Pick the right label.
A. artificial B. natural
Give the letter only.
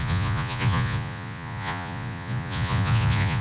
A